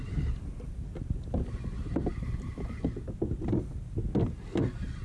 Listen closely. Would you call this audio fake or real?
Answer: real